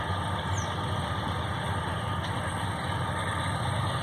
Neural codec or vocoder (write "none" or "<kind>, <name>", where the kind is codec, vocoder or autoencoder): none